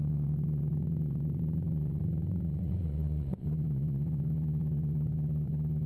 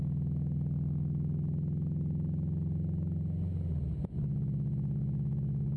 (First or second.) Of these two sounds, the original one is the second